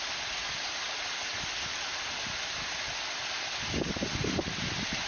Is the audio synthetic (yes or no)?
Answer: no